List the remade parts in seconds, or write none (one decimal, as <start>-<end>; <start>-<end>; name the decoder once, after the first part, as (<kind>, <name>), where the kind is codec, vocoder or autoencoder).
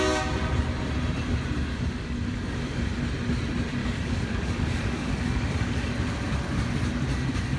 1.7-3.0 (codec, DAC); 3.8-5.9